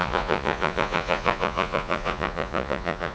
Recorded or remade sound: remade